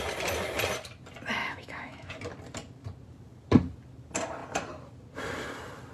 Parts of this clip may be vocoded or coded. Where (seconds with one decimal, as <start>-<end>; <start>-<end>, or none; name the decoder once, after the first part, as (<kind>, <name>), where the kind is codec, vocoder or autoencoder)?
1.4-2.1 (autoencoder, DAC-VAE)